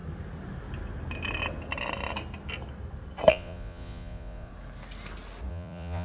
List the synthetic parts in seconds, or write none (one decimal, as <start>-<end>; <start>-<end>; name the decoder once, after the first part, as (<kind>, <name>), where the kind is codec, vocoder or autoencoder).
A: 3.3-4.5 (vocoder, Vocos); 5.5-6.0